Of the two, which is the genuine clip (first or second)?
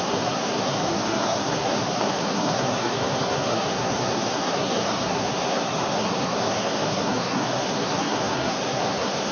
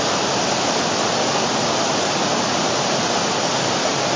second